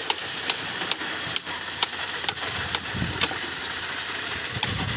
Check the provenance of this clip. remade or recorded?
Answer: remade